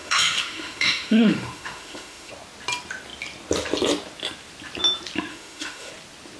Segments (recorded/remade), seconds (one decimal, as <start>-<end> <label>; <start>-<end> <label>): 0.0-2.3 remade; 2.3-5.3 recorded; 5.3-5.9 remade; 5.9-6.4 recorded